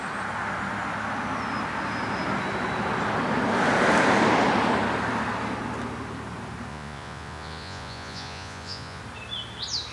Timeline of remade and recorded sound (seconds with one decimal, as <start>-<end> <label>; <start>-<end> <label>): 0.0-6.7 recorded; 6.7-9.0 remade; 9.0-9.9 recorded